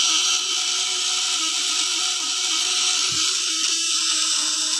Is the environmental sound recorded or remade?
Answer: recorded